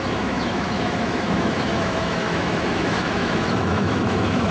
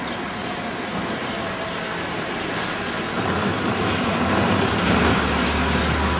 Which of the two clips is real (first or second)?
second